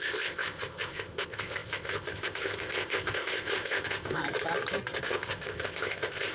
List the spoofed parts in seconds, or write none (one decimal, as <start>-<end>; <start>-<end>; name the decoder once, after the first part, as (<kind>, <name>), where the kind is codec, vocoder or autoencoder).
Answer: 0.0-4.2 (codec, ZipCodec); 5.0-6.3